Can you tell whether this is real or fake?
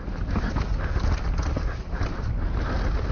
real